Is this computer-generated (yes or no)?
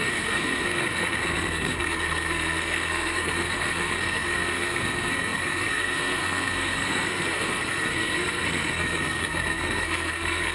yes